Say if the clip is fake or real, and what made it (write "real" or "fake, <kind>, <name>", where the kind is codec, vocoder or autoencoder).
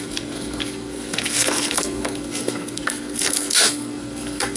fake, codec, SNAC